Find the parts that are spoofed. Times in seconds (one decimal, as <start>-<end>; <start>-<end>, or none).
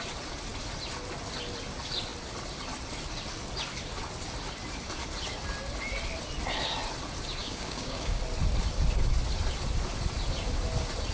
7.4-8.2